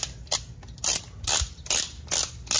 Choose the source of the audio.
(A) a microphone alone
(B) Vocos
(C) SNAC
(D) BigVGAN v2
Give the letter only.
A